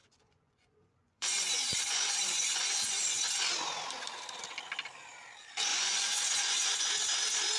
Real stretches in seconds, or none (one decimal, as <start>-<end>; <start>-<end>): 3.2-5.7; 6.9-7.6

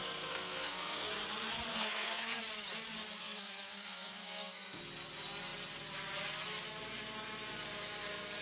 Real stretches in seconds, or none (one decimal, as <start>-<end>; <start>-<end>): 1.1-1.7; 2.4-3.2; 4.8-8.4

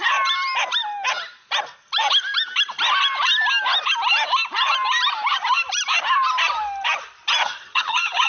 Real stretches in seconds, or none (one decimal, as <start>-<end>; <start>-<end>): 0.0-7.4

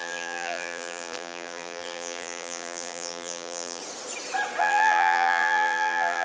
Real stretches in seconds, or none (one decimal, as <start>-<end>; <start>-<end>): 3.8-4.6

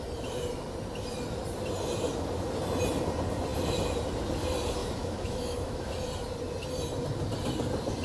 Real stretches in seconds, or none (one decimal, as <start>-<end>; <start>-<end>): 0.0-4.8; 5.9-8.0

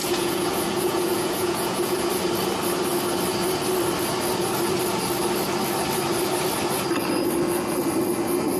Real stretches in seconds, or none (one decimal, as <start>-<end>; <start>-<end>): 2.1-8.6

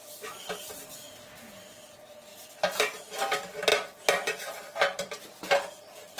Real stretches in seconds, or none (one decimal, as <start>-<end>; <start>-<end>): 0.0-2.3; 3.0-3.7; 5.2-6.2

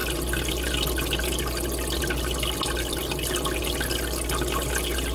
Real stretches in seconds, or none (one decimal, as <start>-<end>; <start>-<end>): 0.0-5.1